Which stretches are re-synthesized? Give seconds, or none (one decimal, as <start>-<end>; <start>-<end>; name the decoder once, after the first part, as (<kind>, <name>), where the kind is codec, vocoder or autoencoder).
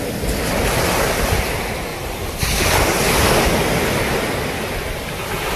none